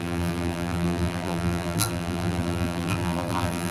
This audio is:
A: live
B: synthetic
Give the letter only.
B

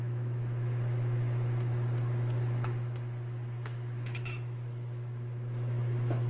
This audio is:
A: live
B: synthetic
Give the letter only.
B